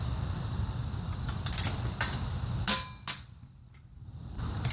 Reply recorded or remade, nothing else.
remade